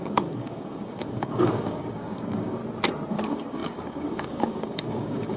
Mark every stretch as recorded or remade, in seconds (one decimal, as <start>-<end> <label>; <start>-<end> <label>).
0.0-2.6 remade; 2.6-3.1 recorded; 3.1-5.4 remade